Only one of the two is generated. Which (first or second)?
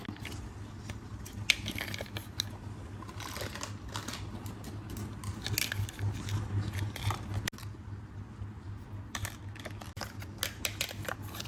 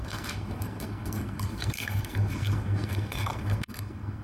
second